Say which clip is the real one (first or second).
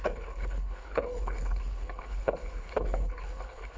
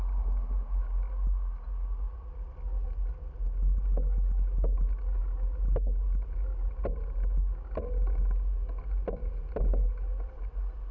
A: second